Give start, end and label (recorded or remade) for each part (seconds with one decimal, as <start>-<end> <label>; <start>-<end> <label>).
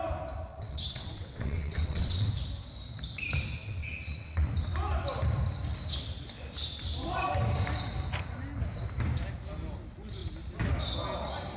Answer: 0.0-0.5 recorded; 0.5-2.3 remade; 2.3-3.6 recorded; 3.6-4.5 remade; 4.5-11.6 recorded